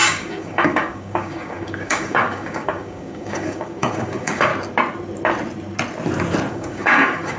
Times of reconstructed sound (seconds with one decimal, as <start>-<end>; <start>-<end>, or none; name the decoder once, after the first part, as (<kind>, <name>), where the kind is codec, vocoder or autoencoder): 0.0-4.5 (codec, DAC); 6.5-7.4